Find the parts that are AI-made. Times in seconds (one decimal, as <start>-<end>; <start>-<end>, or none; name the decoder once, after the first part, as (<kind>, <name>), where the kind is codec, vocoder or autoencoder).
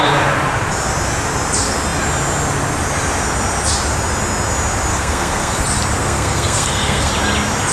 4.9-5.5 (codec, SNAC); 6.0-7.1